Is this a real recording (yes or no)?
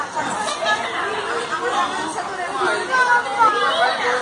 yes